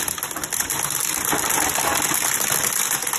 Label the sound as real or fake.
real